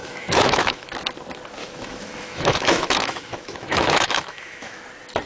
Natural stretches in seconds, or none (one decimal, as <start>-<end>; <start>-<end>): 0.9-1.6; 4.8-5.3